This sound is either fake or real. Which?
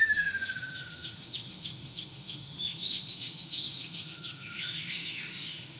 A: fake